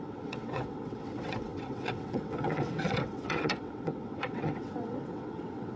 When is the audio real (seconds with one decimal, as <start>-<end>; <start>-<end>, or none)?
none